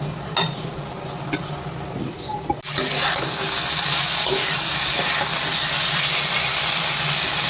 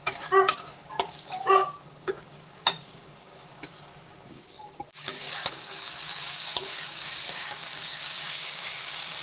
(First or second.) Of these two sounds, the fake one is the second